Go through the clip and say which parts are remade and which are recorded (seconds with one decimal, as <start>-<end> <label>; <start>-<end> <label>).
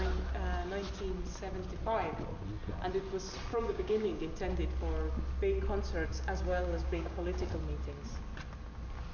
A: 0.0-3.5 recorded; 3.5-4.3 remade; 4.3-6.1 recorded; 6.1-7.5 remade; 7.5-9.1 recorded